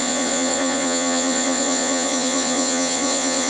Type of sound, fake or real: fake